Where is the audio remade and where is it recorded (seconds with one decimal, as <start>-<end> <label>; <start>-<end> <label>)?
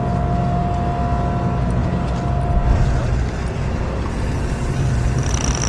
0.0-5.7 recorded